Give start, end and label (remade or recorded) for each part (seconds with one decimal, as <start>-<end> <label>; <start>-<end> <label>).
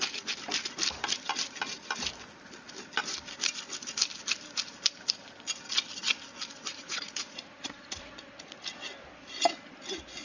0.0-6.7 recorded; 6.7-8.6 remade; 8.6-10.2 recorded